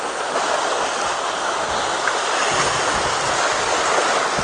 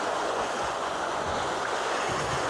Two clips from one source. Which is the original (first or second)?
first